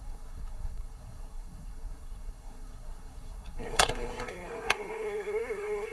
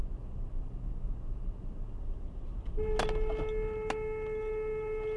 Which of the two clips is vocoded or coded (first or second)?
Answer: first